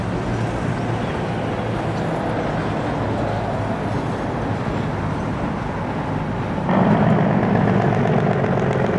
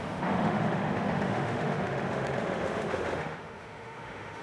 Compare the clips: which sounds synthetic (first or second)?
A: second